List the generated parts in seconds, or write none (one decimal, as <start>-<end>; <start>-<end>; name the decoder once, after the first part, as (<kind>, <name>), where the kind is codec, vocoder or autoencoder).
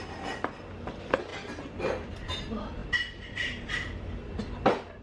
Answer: none